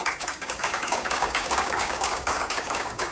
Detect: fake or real fake